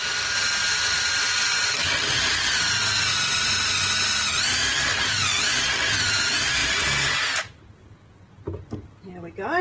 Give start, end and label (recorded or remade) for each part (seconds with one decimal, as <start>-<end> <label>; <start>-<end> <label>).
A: 0.0-6.6 recorded; 6.6-7.1 remade; 7.1-9.6 recorded